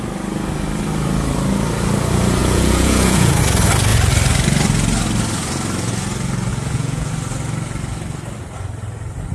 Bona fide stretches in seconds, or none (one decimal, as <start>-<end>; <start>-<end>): 0.0-2.4; 3.4-6.5; 7.1-9.3